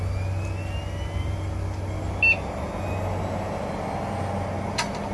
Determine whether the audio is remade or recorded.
recorded